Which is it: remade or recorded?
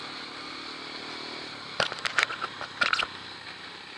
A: recorded